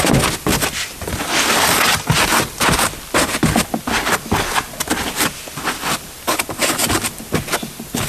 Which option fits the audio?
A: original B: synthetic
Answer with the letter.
A